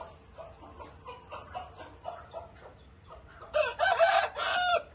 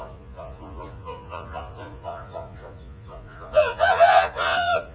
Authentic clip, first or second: first